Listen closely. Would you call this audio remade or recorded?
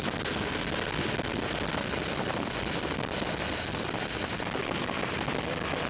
recorded